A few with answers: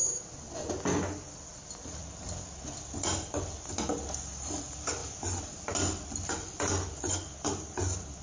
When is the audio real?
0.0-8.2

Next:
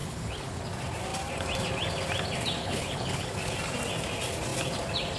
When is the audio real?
0.6-2.6; 3.3-5.2

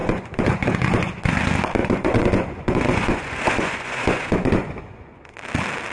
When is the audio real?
1.2-1.8; 5.3-5.9

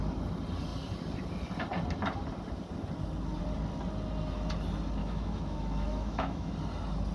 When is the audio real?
0.0-5.0; 6.5-7.1